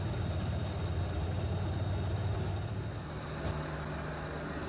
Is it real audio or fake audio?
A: real